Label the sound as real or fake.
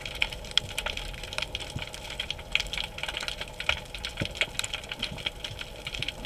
real